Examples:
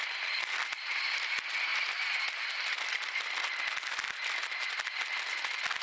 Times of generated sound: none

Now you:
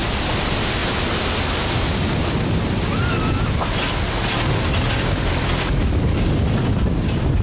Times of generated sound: none